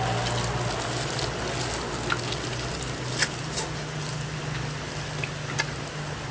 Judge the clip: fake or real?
real